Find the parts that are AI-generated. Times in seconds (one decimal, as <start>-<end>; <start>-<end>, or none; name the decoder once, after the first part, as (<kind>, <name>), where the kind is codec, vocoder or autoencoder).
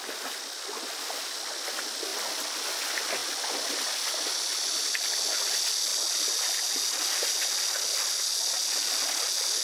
none